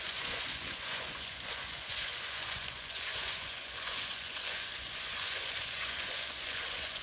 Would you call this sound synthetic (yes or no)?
yes